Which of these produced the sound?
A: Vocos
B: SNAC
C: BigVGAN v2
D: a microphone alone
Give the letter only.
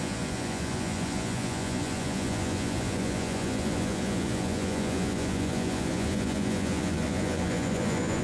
A